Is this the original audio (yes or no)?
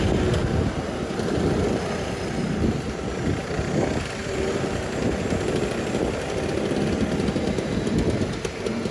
yes